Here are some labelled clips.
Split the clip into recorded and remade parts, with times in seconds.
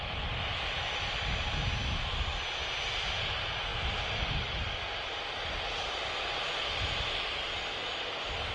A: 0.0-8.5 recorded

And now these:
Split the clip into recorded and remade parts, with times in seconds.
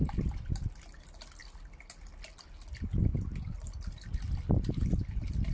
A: 0.0-5.5 recorded